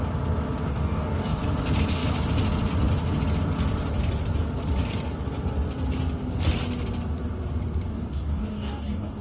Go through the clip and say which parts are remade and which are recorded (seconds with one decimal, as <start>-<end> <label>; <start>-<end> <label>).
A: 0.0-0.7 recorded; 0.7-1.4 remade; 1.4-7.9 recorded; 7.9-9.2 remade